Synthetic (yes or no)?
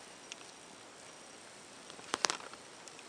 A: no